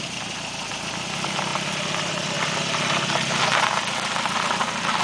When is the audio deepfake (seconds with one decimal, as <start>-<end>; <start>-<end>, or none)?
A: none